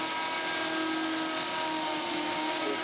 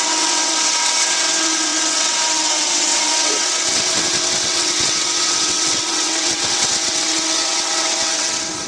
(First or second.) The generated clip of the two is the second